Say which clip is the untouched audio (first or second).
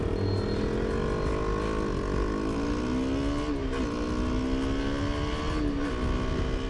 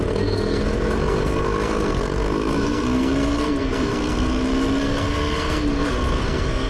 first